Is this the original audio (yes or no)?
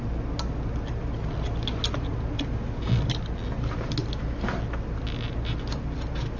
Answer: yes